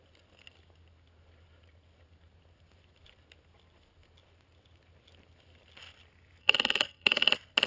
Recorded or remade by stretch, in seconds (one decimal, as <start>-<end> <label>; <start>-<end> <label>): 0.0-6.4 recorded; 6.4-7.3 remade; 7.3-7.7 recorded